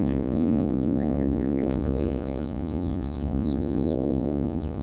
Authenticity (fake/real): fake